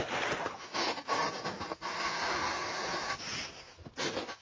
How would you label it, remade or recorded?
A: recorded